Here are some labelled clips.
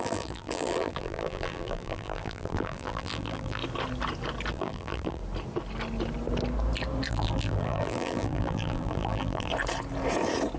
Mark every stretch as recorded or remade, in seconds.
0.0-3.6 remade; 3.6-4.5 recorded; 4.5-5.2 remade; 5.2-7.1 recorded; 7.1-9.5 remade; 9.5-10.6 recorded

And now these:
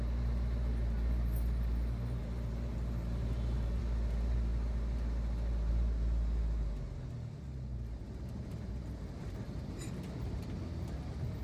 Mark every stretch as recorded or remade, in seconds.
0.0-2.7 recorded; 2.7-3.8 remade; 3.8-7.7 recorded; 7.7-10.1 remade; 10.1-11.4 recorded

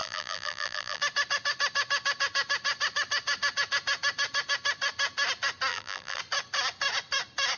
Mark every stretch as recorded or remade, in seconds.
0.0-1.0 remade; 1.0-5.7 recorded; 5.7-6.2 remade; 6.2-7.6 recorded

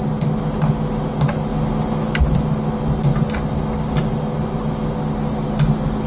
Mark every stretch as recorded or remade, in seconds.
0.0-6.1 recorded

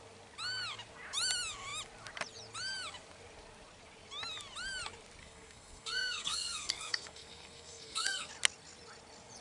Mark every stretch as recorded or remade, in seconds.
0.0-5.2 recorded; 5.2-8.3 remade; 8.3-9.4 recorded